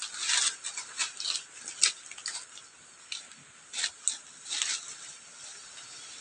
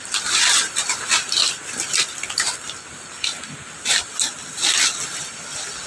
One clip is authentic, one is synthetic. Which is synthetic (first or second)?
second